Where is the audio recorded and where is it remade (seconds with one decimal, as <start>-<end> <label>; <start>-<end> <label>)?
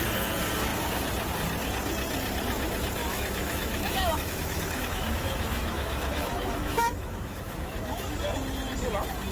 0.0-3.0 recorded; 3.0-8.2 remade; 8.2-9.3 recorded